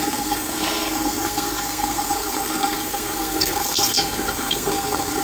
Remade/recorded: remade